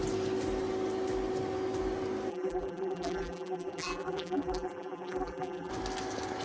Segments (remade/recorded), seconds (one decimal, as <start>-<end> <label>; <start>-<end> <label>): 0.0-2.3 recorded; 2.3-5.7 remade; 5.7-6.4 recorded